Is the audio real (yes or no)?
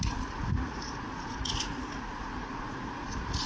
no